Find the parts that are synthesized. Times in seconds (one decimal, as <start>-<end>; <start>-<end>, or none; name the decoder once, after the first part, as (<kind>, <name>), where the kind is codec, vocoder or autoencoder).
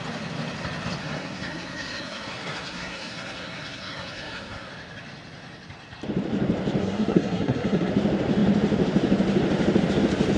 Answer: 1.0-4.7 (codec, SNAC); 6.8-7.9